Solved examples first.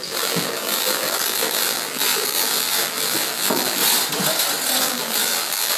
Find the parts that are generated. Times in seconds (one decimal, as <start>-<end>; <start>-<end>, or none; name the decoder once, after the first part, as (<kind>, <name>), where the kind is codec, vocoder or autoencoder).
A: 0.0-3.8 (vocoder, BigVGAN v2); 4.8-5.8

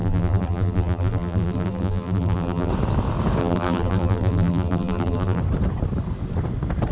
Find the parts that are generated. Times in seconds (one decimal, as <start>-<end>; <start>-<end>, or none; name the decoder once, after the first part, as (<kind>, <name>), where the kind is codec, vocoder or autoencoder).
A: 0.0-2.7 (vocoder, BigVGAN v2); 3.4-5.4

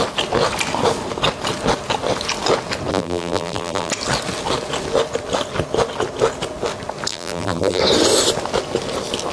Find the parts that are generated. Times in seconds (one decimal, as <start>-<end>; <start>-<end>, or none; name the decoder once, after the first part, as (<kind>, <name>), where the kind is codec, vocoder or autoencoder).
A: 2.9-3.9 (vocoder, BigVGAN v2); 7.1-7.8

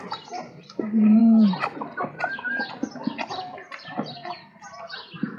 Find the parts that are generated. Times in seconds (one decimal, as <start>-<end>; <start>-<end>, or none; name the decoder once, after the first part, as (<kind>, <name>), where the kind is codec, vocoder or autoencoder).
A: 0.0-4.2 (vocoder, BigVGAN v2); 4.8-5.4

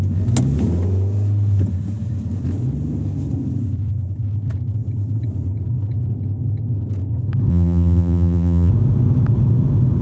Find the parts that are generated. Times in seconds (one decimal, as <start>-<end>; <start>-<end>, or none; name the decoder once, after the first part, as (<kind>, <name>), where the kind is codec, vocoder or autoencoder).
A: 7.5-8.7 (vocoder, BigVGAN v2)